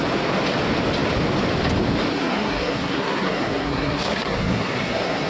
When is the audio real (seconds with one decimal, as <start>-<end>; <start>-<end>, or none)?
0.0-2.1